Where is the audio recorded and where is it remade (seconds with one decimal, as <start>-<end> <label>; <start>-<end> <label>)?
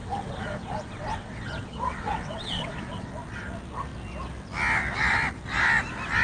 0.0-3.1 remade; 3.1-6.2 recorded